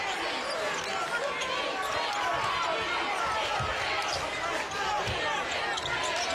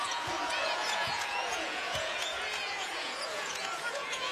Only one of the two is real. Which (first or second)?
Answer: first